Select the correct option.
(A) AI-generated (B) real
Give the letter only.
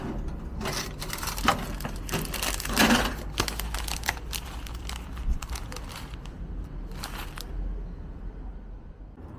B